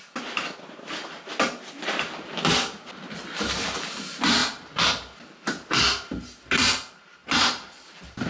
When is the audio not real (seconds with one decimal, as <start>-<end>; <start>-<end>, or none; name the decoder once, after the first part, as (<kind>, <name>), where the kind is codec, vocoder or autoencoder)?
4.4-4.9 (vocoder, BigVGAN v2); 7.2-8.3